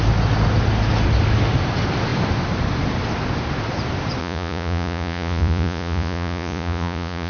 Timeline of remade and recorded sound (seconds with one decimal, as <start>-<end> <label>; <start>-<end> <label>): 0.0-4.2 recorded; 4.2-7.3 remade